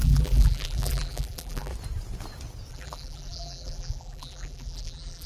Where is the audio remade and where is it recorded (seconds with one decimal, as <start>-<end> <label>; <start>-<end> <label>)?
0.0-1.7 remade; 1.7-2.7 recorded; 2.7-5.3 remade